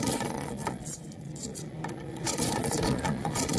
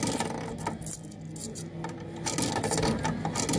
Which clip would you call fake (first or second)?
first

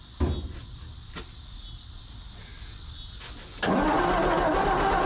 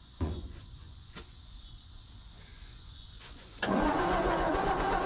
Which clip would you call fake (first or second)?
second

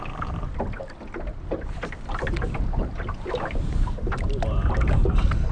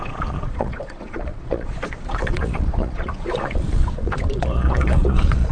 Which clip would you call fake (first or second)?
second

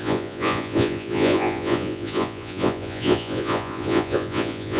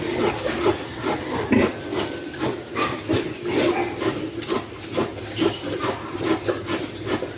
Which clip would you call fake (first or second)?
first